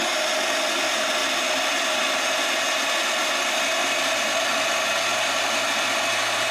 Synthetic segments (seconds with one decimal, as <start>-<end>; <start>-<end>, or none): 1.2-2.2; 3.8-6.0